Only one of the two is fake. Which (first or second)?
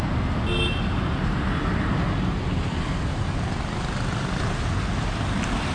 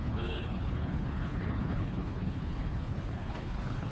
second